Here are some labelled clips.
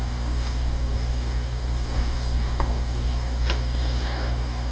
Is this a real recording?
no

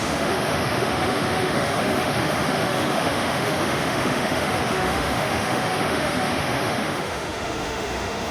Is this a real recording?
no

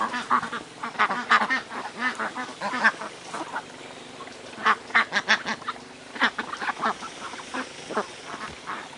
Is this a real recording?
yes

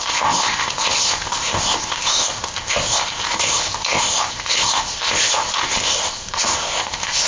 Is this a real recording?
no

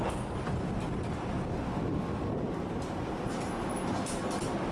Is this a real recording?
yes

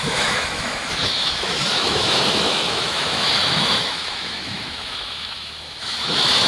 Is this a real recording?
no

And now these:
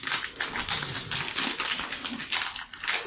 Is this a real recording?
yes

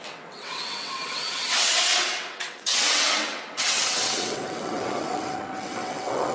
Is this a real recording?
no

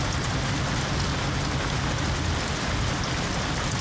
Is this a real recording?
yes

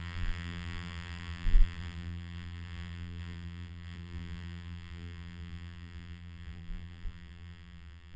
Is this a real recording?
no